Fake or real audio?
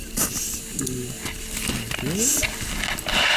real